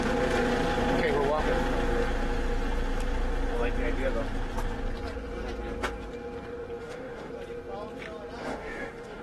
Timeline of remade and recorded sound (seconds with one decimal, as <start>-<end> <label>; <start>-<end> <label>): 0.0-6.8 recorded; 6.8-7.3 remade; 7.3-8.4 recorded; 8.4-9.2 remade